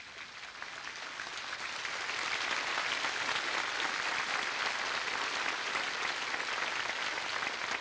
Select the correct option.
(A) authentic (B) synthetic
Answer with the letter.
A